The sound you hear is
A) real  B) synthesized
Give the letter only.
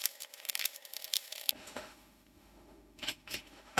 B